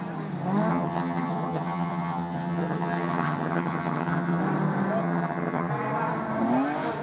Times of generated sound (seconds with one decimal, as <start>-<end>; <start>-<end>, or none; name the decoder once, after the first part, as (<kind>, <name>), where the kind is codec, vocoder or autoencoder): 0.7-4.4 (vocoder, HiFi-GAN); 5.0-5.7